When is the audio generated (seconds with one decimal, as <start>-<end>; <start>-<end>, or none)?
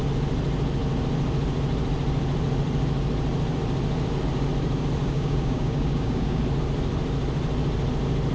5.0-6.4